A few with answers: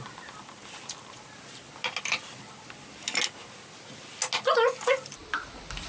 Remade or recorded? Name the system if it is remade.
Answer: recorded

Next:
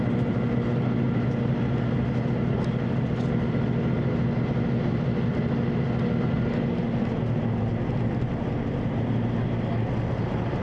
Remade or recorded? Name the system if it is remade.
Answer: recorded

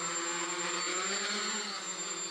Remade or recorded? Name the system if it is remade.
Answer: recorded